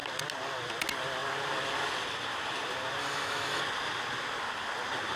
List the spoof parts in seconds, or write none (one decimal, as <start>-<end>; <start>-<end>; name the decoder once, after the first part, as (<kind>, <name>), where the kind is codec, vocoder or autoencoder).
3.0-3.6 (autoencoder, DAC-VAE)